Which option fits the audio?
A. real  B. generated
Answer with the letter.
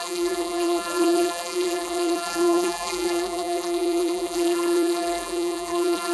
B